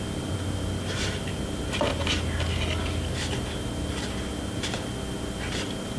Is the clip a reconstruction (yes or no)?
no